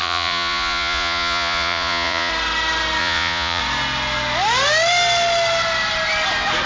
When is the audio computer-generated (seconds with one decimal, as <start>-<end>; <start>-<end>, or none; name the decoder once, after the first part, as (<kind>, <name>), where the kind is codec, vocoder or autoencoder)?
0.0-2.3 (vocoder, Vocos); 3.0-3.6